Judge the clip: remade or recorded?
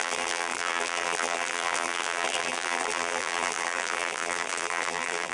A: remade